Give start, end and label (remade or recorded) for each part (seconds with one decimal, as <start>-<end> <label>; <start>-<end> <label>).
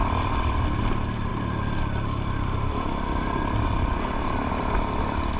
0.0-5.4 recorded